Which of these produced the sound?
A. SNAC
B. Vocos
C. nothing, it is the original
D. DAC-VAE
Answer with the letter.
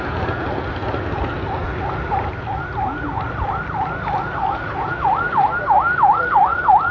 C